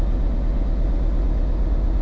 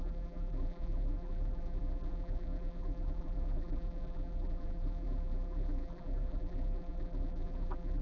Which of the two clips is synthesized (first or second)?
second